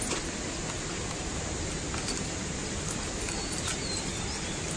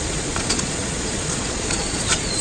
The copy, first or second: second